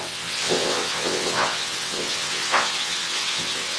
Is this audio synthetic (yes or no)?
yes